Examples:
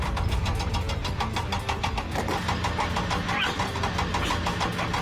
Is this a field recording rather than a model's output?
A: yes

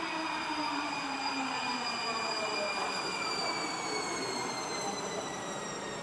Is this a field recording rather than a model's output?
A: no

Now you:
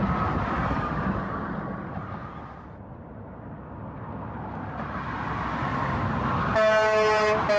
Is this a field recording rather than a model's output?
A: yes